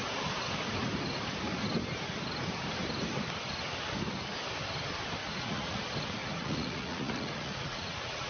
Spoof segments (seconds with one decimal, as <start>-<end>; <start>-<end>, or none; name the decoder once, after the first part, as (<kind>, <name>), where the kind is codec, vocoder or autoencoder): 5.2-5.8 (vocoder, Vocos); 6.2-8.3